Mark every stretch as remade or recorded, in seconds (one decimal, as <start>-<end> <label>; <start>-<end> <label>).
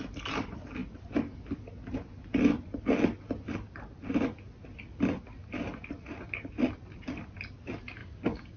0.0-8.0 recorded; 8.0-8.6 remade